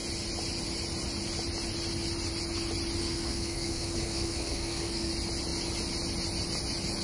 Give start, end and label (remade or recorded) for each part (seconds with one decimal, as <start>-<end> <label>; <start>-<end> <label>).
0.0-3.0 recorded; 3.0-5.1 remade; 5.1-7.0 recorded